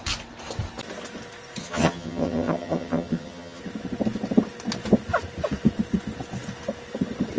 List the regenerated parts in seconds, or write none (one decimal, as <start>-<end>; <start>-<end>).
1.6-3.6

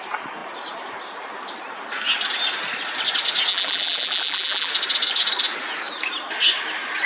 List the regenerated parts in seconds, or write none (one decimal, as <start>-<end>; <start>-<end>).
3.5-4.7

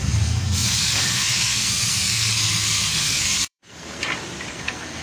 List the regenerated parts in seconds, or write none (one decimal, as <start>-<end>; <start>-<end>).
0.0-4.0; 4.5-5.0

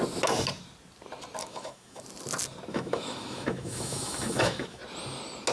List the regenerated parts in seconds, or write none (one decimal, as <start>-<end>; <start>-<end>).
1.4-2.0; 2.7-4.8

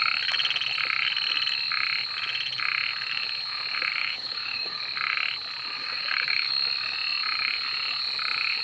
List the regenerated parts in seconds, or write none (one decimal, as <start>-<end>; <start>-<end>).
4.0-4.8; 5.8-6.5

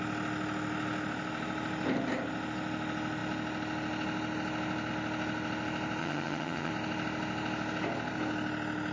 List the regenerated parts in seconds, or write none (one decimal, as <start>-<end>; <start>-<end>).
6.0-6.7

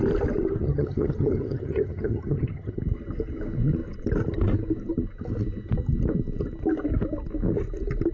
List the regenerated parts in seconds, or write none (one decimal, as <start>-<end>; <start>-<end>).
0.6-2.8